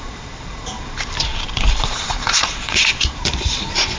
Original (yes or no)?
no